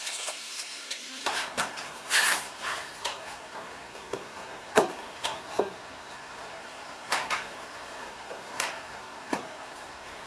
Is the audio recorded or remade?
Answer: remade